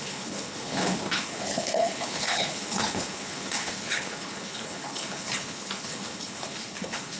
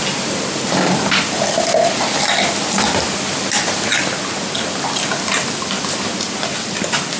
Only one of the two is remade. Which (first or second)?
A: first